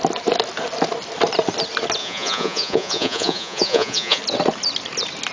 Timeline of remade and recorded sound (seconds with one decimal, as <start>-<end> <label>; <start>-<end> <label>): 0.0-2.0 recorded; 2.0-4.2 remade; 4.2-5.3 recorded